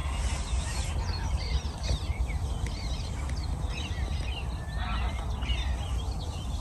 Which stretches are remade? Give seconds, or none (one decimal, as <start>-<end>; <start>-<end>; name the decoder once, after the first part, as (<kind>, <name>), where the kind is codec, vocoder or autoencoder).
none